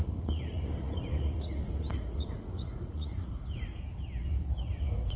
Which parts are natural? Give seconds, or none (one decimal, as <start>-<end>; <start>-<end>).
3.7-4.8